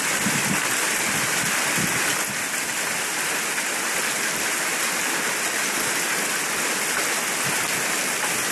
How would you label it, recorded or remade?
recorded